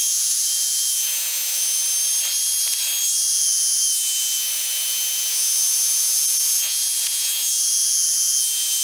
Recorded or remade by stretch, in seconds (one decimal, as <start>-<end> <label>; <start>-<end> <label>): 0.0-1.8 remade; 1.8-3.3 recorded; 3.3-8.8 remade